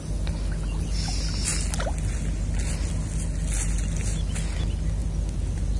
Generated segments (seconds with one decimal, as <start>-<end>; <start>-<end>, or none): none